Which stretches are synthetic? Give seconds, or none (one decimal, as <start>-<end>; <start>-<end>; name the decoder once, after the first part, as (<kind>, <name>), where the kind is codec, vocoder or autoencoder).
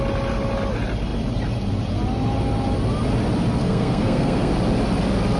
3.6-4.5 (codec, SNAC)